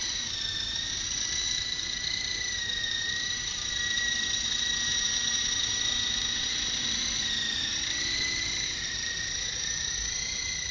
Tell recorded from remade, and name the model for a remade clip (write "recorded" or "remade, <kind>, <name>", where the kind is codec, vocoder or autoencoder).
remade, vocoder, BigVGAN v2